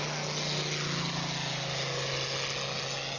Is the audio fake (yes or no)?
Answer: no